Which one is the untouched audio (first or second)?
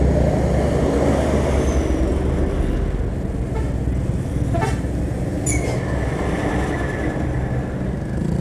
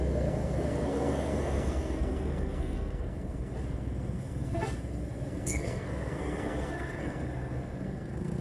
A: first